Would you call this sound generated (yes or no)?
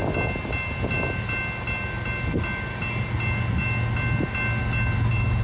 no